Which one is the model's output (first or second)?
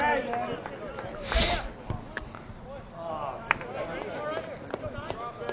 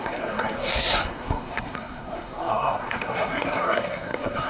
second